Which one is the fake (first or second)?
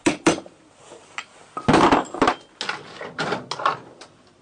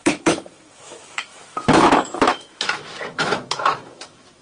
second